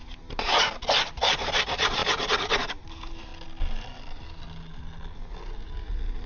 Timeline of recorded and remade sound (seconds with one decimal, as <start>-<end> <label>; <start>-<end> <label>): 0.0-2.0 remade; 2.0-2.7 recorded; 2.7-3.3 remade; 3.3-6.3 recorded